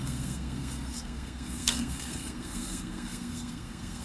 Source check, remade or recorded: remade